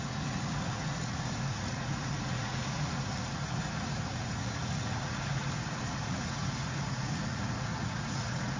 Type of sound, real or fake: fake